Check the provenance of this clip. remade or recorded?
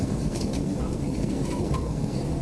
remade